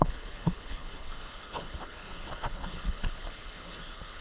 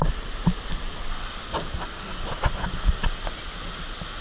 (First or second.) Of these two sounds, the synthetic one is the first